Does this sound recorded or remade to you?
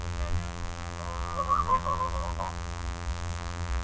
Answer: remade